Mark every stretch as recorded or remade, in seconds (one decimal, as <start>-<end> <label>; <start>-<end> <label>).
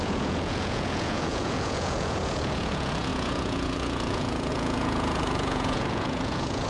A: 0.0-6.7 remade